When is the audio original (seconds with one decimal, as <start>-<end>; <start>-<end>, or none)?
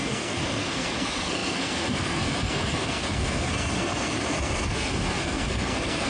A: none